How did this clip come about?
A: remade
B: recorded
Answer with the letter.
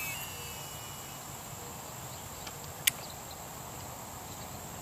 B